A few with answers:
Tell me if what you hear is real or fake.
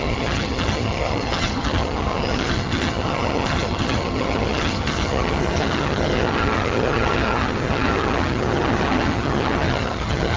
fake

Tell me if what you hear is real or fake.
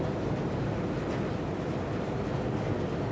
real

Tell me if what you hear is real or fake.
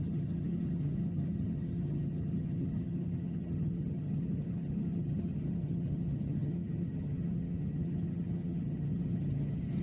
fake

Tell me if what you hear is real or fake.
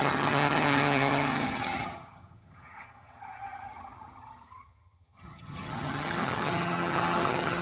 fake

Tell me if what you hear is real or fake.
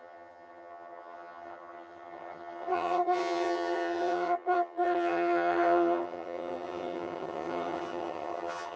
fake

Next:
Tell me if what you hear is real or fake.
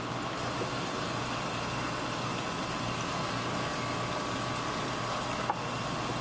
real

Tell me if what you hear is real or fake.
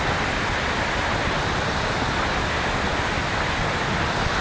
real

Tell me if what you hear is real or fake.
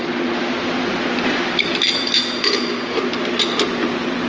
real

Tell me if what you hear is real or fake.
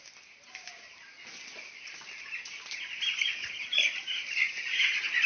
real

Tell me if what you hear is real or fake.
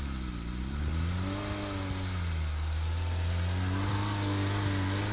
real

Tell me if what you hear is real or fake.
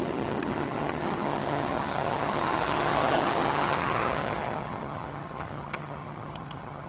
fake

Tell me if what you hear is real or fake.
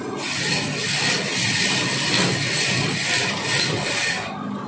real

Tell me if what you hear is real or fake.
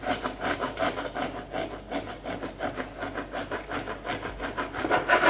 real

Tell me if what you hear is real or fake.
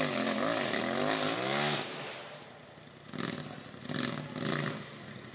real